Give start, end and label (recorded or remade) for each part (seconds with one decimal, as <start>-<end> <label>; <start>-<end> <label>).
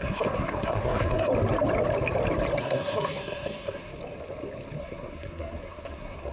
0.0-1.3 remade; 1.3-2.6 recorded; 2.6-3.9 remade; 3.9-4.8 recorded; 4.8-6.3 remade